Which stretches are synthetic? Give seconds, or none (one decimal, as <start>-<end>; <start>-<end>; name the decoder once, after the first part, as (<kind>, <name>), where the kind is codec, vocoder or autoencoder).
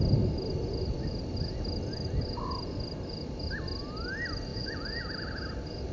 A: 4.5-5.0 (vocoder, Vocos)